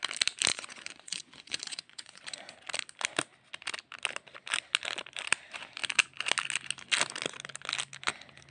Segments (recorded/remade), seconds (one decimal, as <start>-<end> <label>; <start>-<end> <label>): 0.0-0.5 recorded; 0.5-2.5 remade; 2.5-8.5 recorded